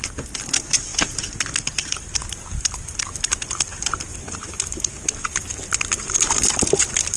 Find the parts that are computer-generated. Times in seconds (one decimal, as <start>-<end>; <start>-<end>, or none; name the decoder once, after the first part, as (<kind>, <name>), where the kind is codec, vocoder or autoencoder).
4.1-5.5 (vocoder, BigVGAN v2)